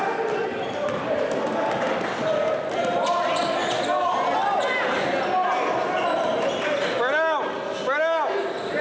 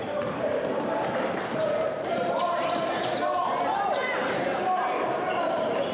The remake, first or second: second